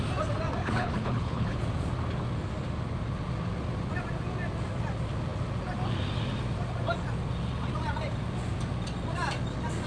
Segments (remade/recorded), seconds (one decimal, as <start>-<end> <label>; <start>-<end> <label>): 0.0-0.6 recorded; 0.6-1.6 remade; 1.6-9.9 recorded